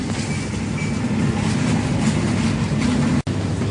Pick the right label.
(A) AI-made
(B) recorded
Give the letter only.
B